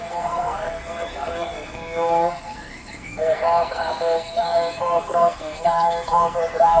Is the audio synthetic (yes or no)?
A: yes